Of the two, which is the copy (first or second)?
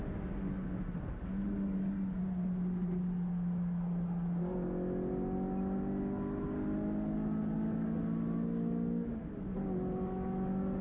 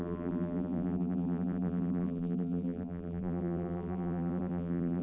second